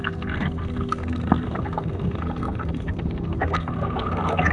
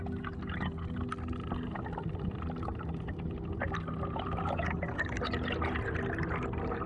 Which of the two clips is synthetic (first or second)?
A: first